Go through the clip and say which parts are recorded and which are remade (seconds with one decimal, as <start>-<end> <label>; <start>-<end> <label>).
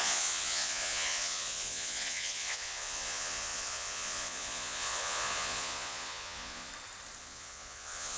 0.0-6.7 remade; 6.7-7.2 recorded; 7.2-8.2 remade